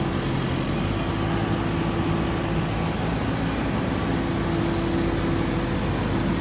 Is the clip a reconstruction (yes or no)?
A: no